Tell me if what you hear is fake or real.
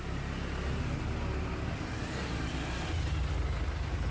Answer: real